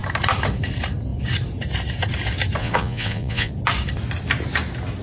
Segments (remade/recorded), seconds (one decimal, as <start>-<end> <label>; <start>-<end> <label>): 0.0-2.6 recorded; 2.6-3.5 remade; 3.5-5.0 recorded